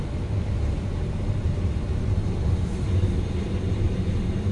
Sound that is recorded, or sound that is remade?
recorded